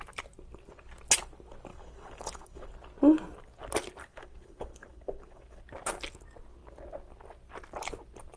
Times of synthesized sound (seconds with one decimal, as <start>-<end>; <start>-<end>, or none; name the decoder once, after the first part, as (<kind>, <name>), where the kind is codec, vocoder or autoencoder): 1.7-2.7 (codec, HILCodec); 4.0-5.6